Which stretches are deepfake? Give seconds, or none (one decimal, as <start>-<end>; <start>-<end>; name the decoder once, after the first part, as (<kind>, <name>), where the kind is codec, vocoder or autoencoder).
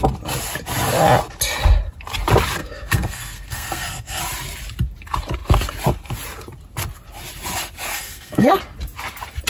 2.6-4.2 (codec, SNAC); 7.9-8.6